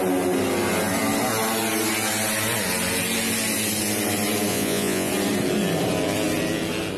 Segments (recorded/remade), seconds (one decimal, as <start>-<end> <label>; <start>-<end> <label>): 0.0-4.5 recorded; 4.5-5.1 remade; 5.1-7.0 recorded